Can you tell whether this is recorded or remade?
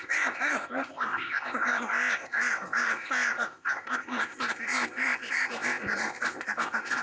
remade